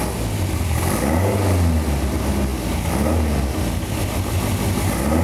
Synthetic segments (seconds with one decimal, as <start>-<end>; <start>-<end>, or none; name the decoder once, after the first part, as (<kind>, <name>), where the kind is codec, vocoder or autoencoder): none